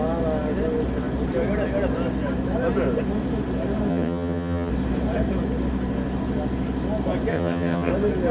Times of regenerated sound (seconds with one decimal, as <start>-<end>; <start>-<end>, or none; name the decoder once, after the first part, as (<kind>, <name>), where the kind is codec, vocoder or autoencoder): 3.9-4.7 (vocoder, HiFi-GAN); 7.3-7.9